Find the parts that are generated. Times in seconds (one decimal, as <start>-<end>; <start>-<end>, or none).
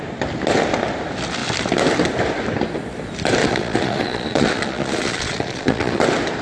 3.4-6.0